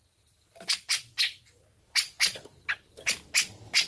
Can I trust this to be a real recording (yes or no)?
yes